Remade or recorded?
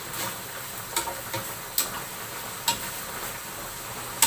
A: recorded